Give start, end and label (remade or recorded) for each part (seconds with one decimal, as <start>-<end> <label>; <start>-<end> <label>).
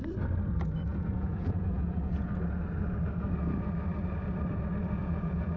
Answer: 0.0-0.9 recorded; 0.9-2.4 remade; 2.4-5.0 recorded; 5.0-5.6 remade